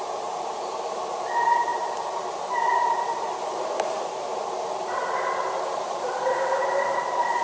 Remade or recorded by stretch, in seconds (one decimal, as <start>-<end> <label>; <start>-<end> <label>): 0.0-5.0 remade; 5.0-5.6 recorded; 5.6-7.4 remade